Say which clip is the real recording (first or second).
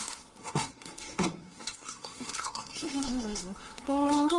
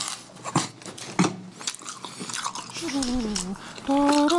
second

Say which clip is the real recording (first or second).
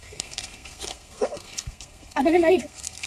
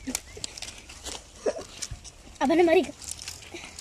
second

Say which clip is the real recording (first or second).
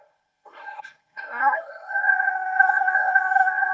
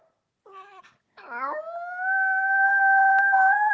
second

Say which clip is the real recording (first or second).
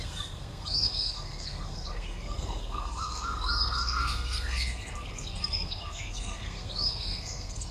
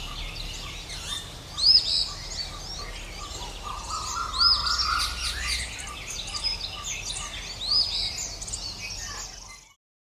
second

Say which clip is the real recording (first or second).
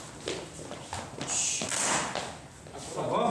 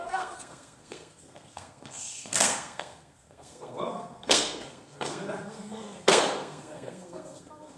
first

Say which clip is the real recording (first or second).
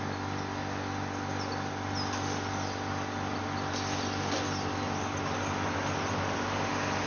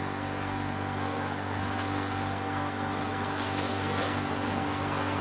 first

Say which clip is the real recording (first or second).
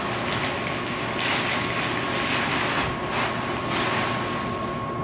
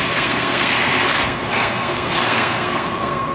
first